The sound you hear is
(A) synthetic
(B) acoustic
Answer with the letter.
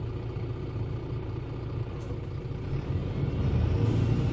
B